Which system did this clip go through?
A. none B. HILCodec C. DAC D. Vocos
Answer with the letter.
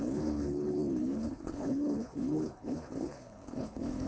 B